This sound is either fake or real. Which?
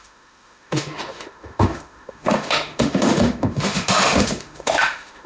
fake